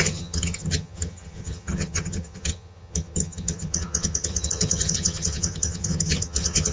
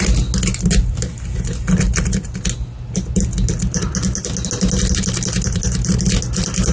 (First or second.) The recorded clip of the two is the second